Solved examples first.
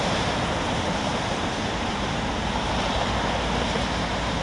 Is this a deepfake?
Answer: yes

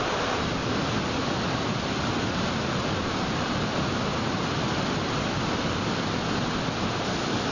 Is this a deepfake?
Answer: no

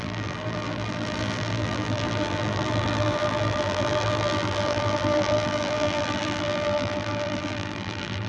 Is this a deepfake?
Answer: yes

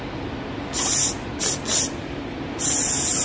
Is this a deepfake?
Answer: no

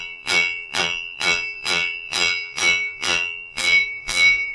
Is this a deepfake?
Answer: yes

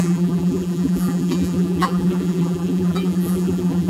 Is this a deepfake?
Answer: yes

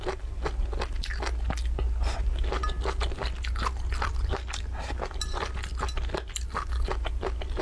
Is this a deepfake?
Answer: no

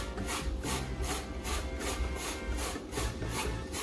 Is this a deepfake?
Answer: no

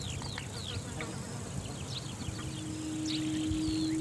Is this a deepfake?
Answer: no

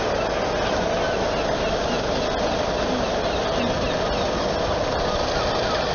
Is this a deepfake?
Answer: no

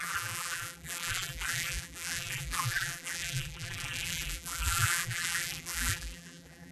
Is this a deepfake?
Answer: yes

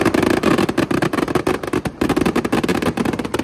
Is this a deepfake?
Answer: no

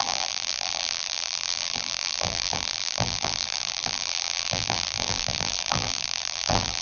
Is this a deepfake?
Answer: yes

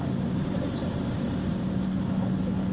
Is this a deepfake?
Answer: no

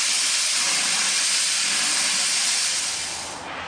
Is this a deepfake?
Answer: no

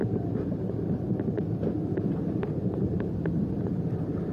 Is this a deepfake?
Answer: yes